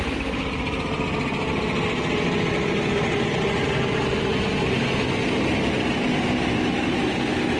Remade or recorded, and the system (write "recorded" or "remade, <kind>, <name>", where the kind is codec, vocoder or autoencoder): recorded